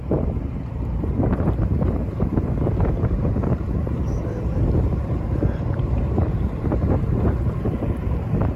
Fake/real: fake